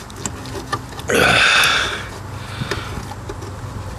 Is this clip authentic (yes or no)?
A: yes